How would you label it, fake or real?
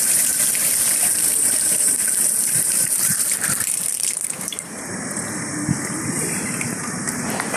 fake